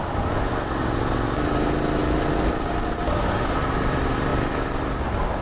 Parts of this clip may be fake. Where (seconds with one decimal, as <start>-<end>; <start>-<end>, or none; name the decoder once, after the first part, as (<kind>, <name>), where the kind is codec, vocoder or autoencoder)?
none